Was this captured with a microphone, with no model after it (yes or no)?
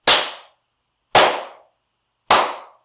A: yes